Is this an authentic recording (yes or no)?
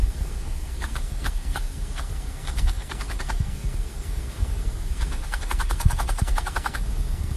no